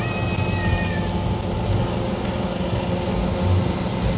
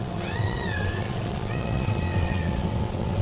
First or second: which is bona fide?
first